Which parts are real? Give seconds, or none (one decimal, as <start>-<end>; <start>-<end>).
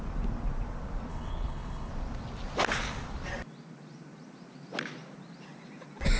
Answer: 0.0-1.1; 1.9-6.2